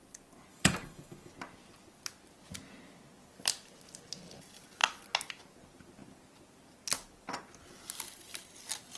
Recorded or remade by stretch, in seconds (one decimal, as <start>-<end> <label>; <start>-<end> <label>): 0.0-0.5 recorded; 0.5-1.3 remade; 1.3-9.0 recorded